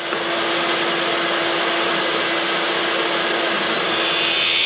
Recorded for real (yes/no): yes